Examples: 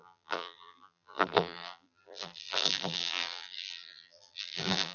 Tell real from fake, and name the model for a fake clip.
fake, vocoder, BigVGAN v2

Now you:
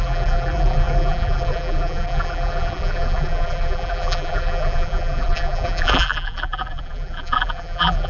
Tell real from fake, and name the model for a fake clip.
fake, vocoder, BigVGAN v2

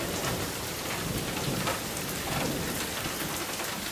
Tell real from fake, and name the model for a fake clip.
fake, vocoder, BigVGAN v2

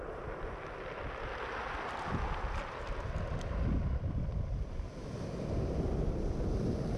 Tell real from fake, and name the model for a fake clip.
real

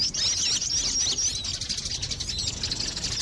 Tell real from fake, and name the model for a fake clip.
real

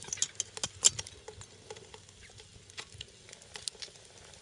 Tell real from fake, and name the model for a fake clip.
real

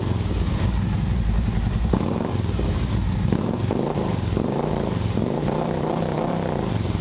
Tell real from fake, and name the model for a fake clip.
fake, vocoder, BigVGAN v2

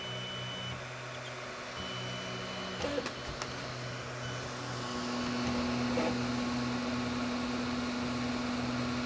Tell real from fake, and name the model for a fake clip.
real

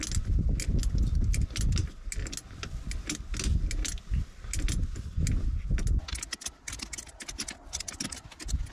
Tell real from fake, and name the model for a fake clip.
real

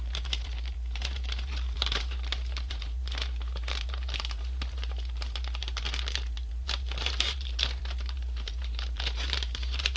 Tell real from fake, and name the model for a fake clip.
fake, vocoder, BigVGAN v2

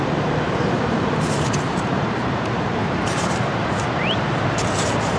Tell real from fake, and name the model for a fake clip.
fake, vocoder, BigVGAN v2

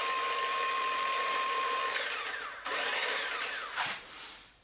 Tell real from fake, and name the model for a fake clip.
fake, vocoder, BigVGAN v2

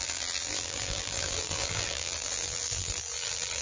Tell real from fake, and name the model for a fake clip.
fake, vocoder, BigVGAN v2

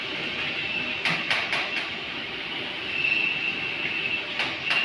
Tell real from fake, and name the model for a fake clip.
real